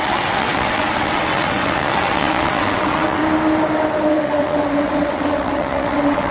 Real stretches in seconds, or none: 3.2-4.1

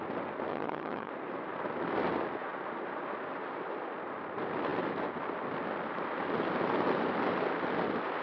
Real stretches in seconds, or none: 0.0-0.5; 1.1-8.2